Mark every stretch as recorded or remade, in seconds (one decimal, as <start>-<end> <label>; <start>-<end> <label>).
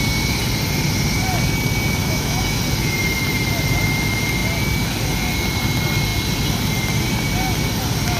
0.0-2.0 recorded; 2.0-2.6 remade; 2.6-8.2 recorded